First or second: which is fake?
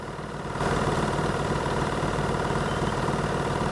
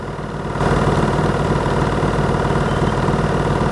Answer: first